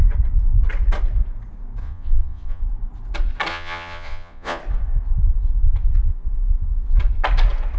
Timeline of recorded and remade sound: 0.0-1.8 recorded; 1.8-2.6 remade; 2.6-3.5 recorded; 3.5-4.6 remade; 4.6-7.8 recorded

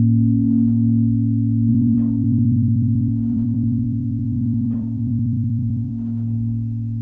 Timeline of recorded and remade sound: 0.0-1.7 recorded; 1.7-5.9 remade; 5.9-7.0 recorded

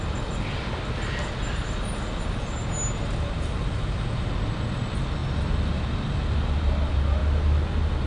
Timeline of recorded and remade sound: 0.0-8.1 recorded

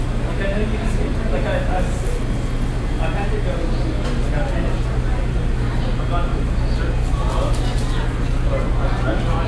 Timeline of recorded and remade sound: 0.0-9.5 recorded

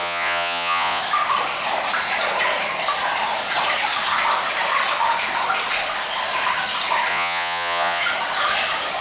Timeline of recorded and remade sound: 0.0-1.0 remade; 1.0-7.1 recorded; 7.1-8.0 remade; 8.0-9.0 recorded

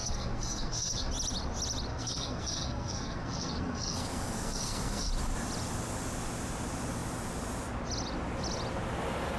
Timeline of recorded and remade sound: 0.0-1.1 remade; 1.1-1.9 recorded; 1.9-5.1 remade; 5.1-9.4 recorded

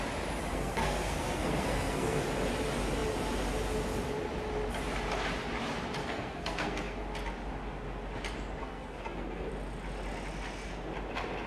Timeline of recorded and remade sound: 0.0-0.5 recorded; 0.5-2.2 remade; 2.2-6.0 recorded; 6.0-7.0 remade; 7.0-8.6 recorded; 8.6-9.5 remade; 9.5-11.5 recorded